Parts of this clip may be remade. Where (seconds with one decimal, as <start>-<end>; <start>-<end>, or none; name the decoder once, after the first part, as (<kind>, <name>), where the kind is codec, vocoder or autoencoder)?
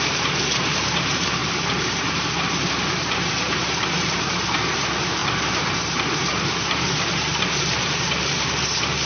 0.0-9.1 (vocoder, BigVGAN v2)